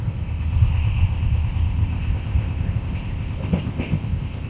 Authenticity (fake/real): fake